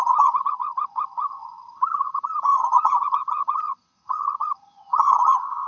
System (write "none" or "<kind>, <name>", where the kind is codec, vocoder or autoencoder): vocoder, HiFi-GAN